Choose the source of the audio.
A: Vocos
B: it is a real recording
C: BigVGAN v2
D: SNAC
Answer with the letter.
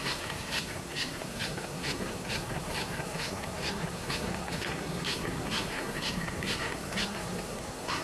D